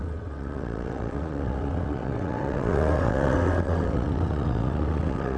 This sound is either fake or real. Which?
fake